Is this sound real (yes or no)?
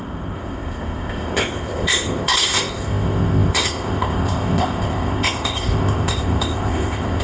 no